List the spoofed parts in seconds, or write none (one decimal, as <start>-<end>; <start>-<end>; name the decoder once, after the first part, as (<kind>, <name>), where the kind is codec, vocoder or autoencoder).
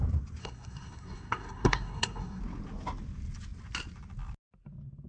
0.4-2.4 (codec, SNAC)